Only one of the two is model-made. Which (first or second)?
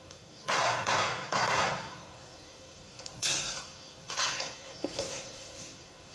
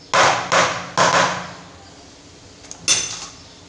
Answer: first